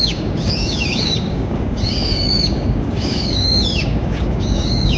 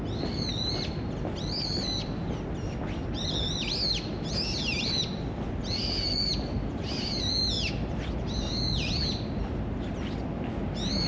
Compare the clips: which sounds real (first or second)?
second